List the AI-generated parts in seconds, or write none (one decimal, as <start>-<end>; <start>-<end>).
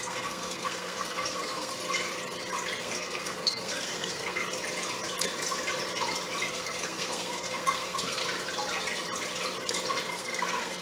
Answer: 0.0-1.7; 2.8-4.4; 6.5-8.2; 10.1-10.8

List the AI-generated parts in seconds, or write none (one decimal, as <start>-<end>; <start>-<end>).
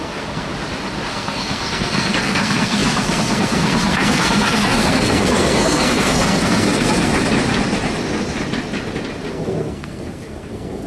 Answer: 0.0-0.5; 1.1-7.1; 9.3-10.9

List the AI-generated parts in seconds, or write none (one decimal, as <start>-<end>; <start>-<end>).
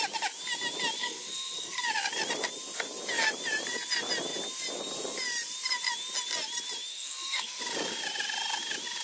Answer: 1.0-1.8; 6.9-7.6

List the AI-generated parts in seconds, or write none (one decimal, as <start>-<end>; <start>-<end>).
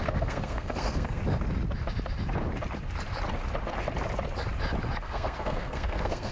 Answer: 0.0-1.2; 5.0-6.3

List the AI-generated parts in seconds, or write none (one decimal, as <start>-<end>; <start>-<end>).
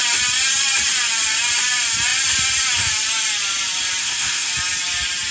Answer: 4.0-4.5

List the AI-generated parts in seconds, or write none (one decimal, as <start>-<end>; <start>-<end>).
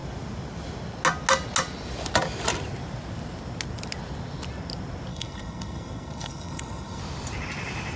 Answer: 5.1-7.0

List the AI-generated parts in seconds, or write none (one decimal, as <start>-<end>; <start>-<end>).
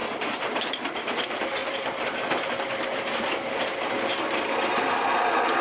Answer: none